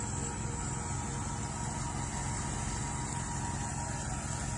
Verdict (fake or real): real